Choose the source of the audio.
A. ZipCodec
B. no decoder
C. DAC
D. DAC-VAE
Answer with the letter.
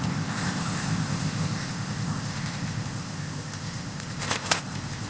A